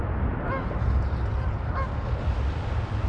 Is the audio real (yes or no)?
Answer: yes